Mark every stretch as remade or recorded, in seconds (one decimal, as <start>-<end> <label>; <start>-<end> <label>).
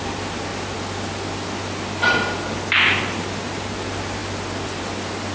0.0-5.3 recorded